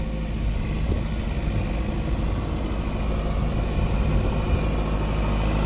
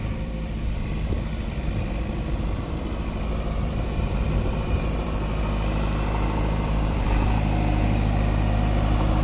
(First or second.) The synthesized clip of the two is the second